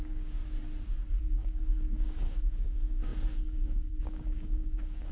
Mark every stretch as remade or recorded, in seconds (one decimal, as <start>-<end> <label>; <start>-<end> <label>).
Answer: 0.0-0.4 remade; 0.4-1.2 recorded; 1.2-5.1 remade